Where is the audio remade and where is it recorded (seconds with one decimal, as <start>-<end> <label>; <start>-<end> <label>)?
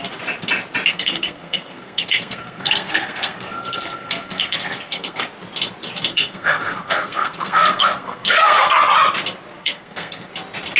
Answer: 0.0-0.9 recorded; 0.9-5.2 remade; 5.2-6.1 recorded; 6.1-8.8 remade; 8.8-9.6 recorded; 9.6-10.3 remade; 10.3-10.8 recorded